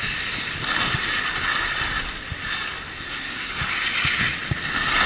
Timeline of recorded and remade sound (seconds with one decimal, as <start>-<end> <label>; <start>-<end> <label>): 0.0-2.9 recorded; 2.9-3.5 remade; 3.5-5.1 recorded